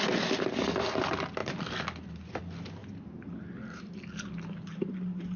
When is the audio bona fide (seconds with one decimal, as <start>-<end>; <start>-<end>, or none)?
0.0-5.4